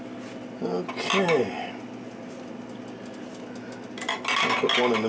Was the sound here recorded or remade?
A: recorded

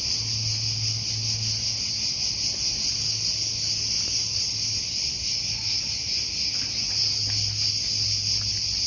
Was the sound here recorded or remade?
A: recorded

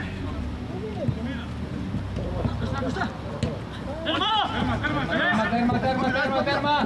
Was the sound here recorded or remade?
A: recorded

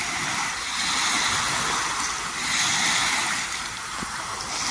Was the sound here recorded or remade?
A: recorded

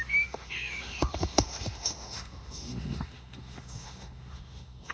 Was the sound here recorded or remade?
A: remade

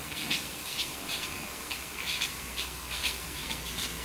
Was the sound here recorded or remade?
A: remade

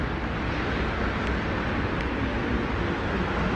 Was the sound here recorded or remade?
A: recorded